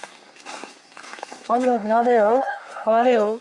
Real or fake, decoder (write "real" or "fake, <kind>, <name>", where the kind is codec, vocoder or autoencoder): fake, codec, SNAC